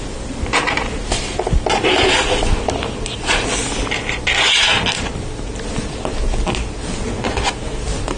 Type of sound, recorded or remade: recorded